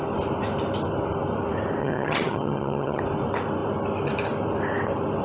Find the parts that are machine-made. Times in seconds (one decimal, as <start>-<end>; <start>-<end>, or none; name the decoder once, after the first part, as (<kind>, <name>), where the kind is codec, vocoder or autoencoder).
1.8-3.0 (vocoder, HiFi-GAN)